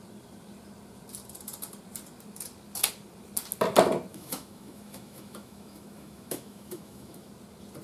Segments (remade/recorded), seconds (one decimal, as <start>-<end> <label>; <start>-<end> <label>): 0.0-4.1 recorded; 4.1-7.3 remade; 7.3-7.8 recorded